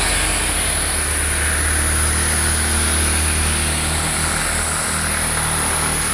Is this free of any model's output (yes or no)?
yes